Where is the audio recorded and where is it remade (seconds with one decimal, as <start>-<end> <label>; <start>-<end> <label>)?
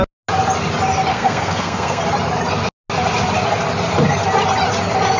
0.0-1.1 recorded; 1.1-2.0 remade; 2.0-5.2 recorded